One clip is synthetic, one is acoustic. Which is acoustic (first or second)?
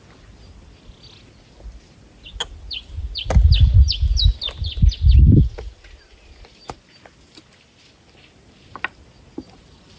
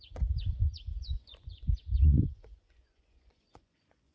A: first